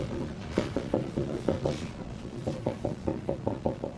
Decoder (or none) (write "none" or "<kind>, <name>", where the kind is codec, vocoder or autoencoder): vocoder, Vocos